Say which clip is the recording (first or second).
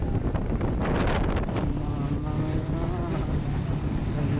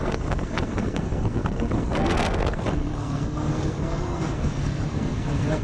first